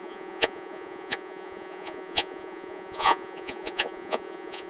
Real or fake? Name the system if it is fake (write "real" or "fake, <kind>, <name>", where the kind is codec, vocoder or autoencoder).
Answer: fake, vocoder, Vocos